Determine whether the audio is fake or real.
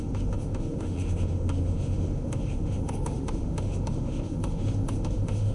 fake